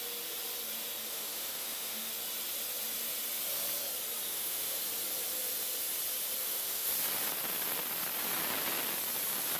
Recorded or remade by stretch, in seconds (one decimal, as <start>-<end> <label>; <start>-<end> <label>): 0.0-1.1 recorded; 1.1-2.1 remade; 2.1-4.3 recorded; 4.3-4.8 remade; 4.8-6.4 recorded; 6.4-6.9 remade; 6.9-9.6 recorded